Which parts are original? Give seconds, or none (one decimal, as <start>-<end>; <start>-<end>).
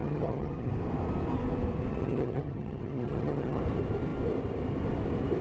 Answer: 0.7-1.9; 3.6-5.4